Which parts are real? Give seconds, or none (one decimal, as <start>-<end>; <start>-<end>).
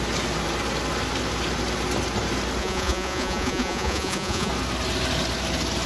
0.0-2.6; 4.5-5.9